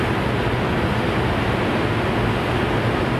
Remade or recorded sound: recorded